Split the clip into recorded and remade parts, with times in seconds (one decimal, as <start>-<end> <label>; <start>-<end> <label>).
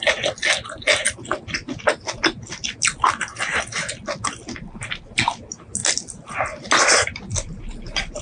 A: 0.0-8.2 recorded